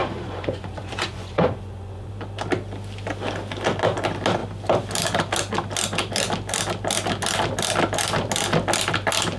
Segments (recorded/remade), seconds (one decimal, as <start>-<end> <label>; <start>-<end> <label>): 0.0-2.1 remade; 2.1-9.4 recorded